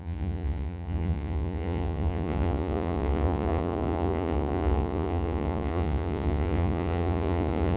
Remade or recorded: remade